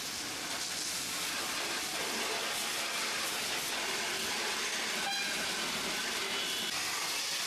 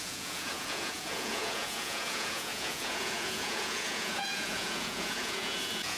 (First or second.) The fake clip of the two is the second